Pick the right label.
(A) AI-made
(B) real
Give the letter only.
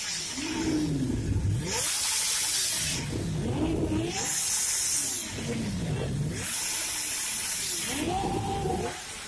B